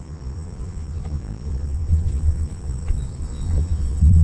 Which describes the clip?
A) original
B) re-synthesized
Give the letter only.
B